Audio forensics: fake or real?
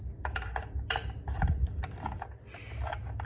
real